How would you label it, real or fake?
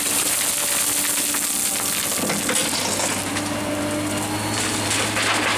real